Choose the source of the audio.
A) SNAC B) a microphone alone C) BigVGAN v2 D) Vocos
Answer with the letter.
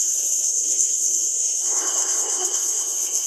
A